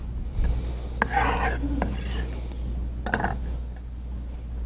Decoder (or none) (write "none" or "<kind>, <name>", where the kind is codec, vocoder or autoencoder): none